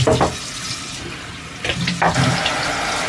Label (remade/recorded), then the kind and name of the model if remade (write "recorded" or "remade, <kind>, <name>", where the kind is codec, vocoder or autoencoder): recorded